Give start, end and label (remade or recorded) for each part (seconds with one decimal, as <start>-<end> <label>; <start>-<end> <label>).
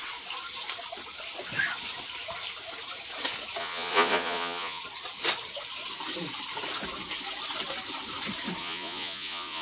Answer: 0.0-3.6 recorded; 3.6-4.8 remade; 4.8-8.6 recorded; 8.6-9.6 remade